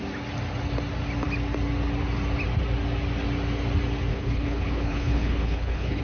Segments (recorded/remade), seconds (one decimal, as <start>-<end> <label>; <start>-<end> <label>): 0.0-4.1 recorded; 4.1-6.0 remade